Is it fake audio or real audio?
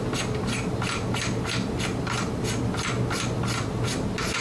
real